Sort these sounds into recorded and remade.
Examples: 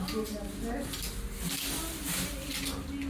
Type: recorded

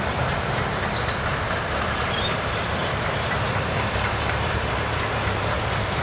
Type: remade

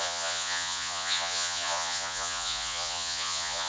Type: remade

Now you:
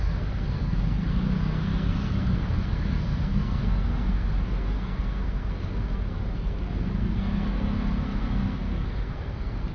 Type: remade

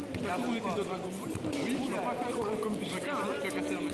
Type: recorded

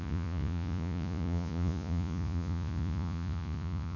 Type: remade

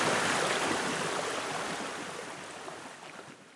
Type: recorded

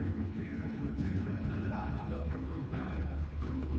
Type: remade